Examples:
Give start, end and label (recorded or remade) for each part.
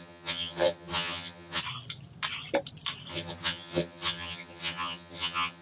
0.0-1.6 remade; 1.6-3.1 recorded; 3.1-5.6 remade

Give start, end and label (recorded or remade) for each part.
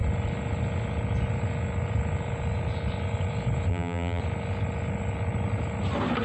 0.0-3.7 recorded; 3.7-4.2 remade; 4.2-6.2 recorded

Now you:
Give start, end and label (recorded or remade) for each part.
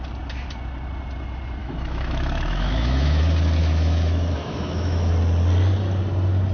0.0-1.6 recorded; 1.6-3.2 remade; 3.2-3.6 recorded; 3.6-5.1 remade; 5.1-6.5 recorded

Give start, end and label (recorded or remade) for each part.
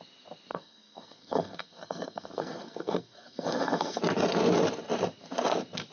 0.0-0.5 recorded; 0.5-4.0 remade; 4.0-5.9 recorded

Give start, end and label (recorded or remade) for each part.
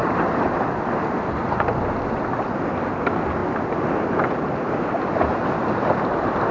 0.0-6.5 recorded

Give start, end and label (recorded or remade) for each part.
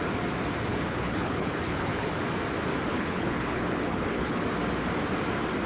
0.0-0.7 recorded; 0.7-2.1 remade; 2.1-2.9 recorded; 2.9-4.4 remade; 4.4-5.7 recorded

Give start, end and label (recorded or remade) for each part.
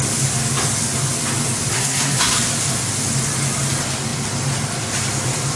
0.0-1.7 recorded; 1.7-2.3 remade; 2.3-5.6 recorded